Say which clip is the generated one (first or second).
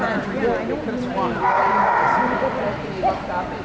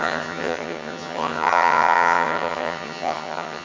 second